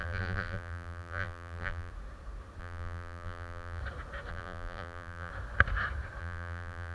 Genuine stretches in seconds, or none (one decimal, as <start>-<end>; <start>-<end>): 1.9-2.6; 3.8-4.3; 5.3-6.2